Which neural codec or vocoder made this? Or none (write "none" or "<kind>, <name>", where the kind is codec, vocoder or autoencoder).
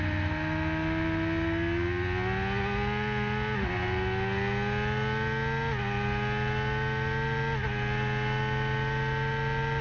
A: none